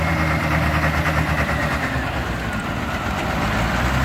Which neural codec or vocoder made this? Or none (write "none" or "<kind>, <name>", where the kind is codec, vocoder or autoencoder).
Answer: vocoder, BigVGAN v2